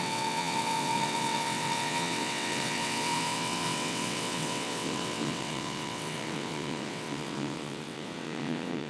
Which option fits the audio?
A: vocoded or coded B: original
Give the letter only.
A